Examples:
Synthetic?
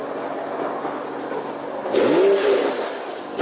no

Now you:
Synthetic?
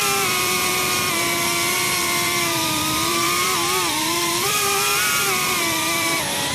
yes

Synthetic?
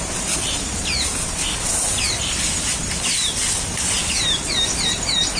no